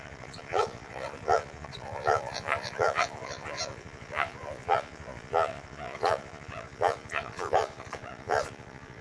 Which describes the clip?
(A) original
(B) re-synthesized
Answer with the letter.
B